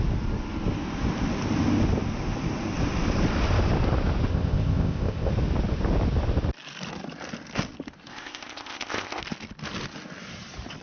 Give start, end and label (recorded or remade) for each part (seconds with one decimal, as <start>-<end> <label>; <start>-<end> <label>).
0.0-4.3 recorded; 4.3-5.3 remade; 5.3-8.1 recorded; 8.1-9.2 remade; 9.2-10.8 recorded